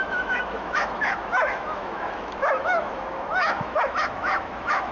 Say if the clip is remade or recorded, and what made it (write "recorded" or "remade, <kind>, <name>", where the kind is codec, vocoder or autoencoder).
remade, autoencoder, DAC-VAE